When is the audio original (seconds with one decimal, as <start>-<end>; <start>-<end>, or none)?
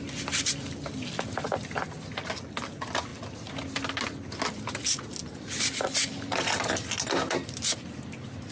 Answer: 0.0-8.5